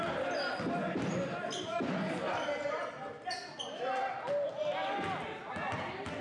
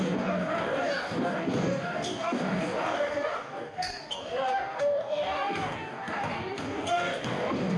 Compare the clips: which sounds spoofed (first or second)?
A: second